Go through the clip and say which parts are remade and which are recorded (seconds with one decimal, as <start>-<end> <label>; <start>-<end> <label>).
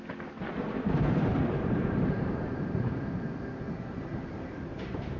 0.0-1.3 recorded; 1.3-3.0 remade; 3.0-4.1 recorded; 4.1-5.2 remade